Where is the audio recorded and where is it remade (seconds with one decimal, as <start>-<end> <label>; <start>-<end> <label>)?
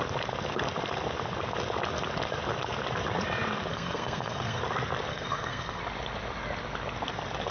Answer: 0.0-3.7 recorded; 3.7-4.6 remade; 4.6-5.1 recorded; 5.1-5.8 remade; 5.8-7.5 recorded